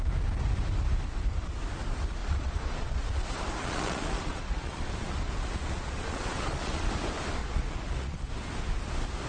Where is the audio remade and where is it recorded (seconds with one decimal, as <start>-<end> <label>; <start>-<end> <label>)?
0.0-2.2 recorded; 2.2-3.0 remade; 3.0-3.6 recorded; 3.6-6.9 remade; 6.9-7.4 recorded; 7.4-8.3 remade; 8.3-9.3 recorded